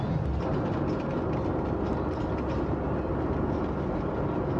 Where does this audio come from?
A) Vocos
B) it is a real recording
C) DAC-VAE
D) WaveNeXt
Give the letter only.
B